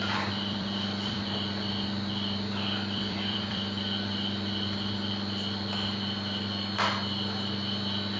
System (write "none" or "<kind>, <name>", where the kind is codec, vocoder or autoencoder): vocoder, BigVGAN v2